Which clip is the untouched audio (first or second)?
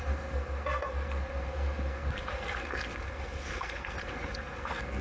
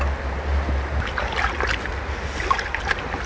second